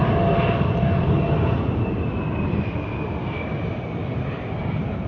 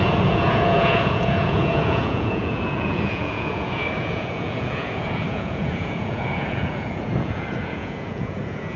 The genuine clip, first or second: first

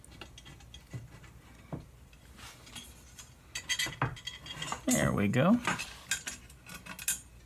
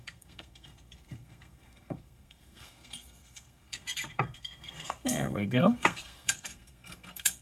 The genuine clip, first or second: first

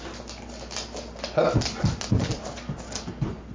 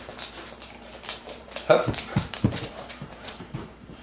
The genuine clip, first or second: first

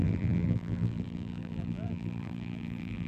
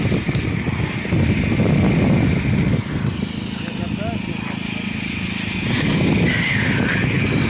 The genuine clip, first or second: second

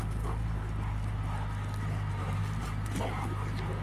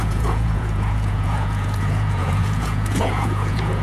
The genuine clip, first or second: first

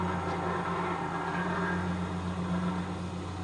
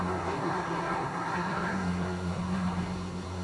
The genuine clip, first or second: first